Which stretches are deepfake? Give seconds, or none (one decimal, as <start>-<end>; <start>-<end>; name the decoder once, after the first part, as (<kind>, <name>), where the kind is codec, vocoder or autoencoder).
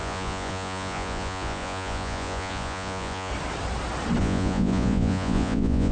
0.0-3.3 (vocoder, Vocos); 4.2-5.9